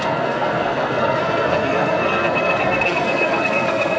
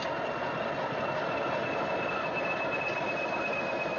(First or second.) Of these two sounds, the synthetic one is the first